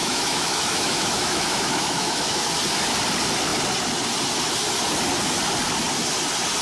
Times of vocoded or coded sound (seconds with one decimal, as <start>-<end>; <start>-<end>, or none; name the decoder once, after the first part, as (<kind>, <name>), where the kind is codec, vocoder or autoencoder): 0.0-2.5 (autoencoder, DAC-VAE)